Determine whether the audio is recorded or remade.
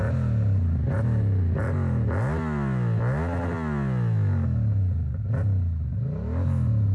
recorded